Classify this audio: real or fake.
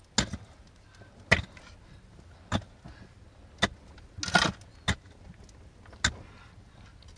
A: real